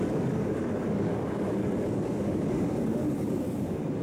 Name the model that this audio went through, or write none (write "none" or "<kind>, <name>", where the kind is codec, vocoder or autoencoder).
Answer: codec, DAC